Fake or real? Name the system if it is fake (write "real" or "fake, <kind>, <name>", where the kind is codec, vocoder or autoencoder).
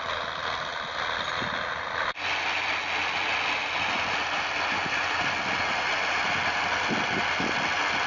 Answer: real